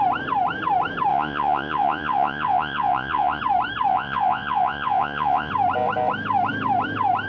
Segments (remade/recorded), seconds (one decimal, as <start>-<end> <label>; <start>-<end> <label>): 0.0-1.1 recorded; 1.1-3.4 remade; 3.4-3.9 recorded; 3.9-5.5 remade; 5.5-7.3 recorded

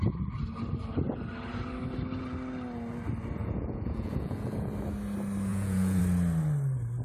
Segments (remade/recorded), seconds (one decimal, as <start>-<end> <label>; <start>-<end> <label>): 0.0-3.4 recorded; 3.4-4.7 remade; 4.7-5.5 recorded; 5.5-6.0 remade; 6.0-7.0 recorded

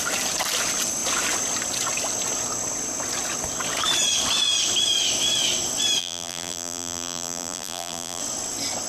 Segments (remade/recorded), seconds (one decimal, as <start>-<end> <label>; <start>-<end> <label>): 0.0-6.0 recorded; 6.0-8.2 remade; 8.2-8.9 recorded

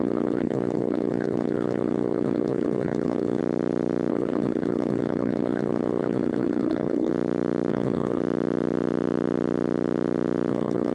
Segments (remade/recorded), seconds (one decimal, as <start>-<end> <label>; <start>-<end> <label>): 0.0-3.4 remade; 3.4-4.1 recorded; 4.1-7.1 remade; 7.1-7.7 recorded; 7.7-8.2 remade; 8.2-10.5 recorded; 10.5-10.9 remade

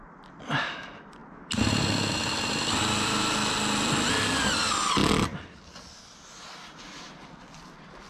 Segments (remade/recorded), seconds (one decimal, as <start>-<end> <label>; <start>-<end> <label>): 0.0-8.1 recorded